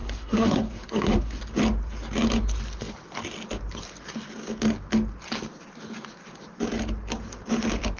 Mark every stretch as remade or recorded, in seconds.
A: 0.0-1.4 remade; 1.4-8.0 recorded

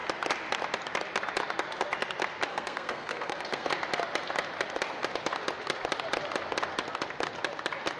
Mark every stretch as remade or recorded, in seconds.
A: 0.0-2.5 recorded; 2.5-3.7 remade; 3.7-8.0 recorded

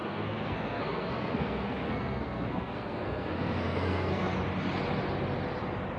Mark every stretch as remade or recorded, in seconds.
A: 0.0-4.3 remade; 4.3-6.0 recorded

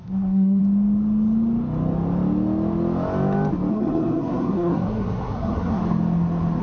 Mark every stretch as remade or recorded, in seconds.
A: 0.0-0.6 remade; 0.6-3.7 recorded; 3.7-5.8 remade; 5.8-6.6 recorded

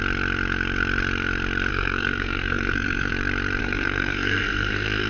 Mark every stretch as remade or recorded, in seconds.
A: 0.0-1.7 recorded; 1.7-3.1 remade; 3.1-3.6 recorded; 3.6-5.1 remade